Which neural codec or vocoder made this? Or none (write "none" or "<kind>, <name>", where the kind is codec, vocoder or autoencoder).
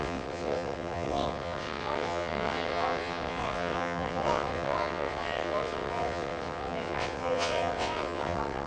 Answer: vocoder, WaveNeXt